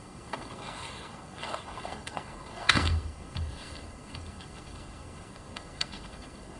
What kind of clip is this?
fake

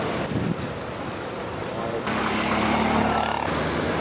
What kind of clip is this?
real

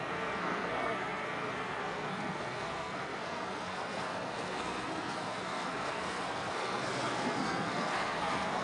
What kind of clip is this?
fake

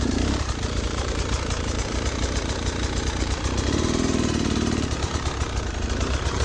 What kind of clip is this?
fake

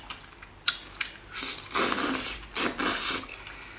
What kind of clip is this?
real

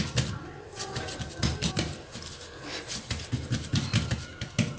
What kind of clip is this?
real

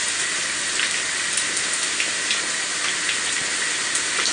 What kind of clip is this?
real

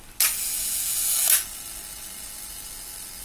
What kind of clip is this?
real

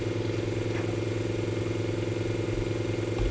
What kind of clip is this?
real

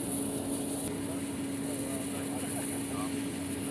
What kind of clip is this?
real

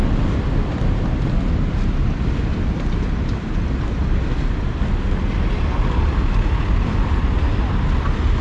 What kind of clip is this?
real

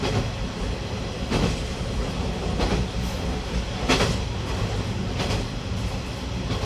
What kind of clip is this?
real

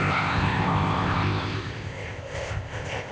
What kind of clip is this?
fake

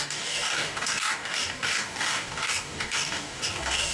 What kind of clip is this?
fake